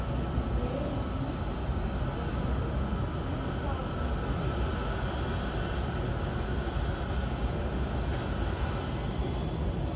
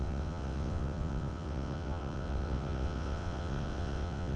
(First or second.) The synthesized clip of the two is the second